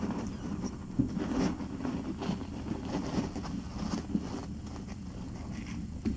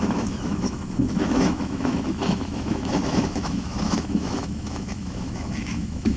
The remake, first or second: second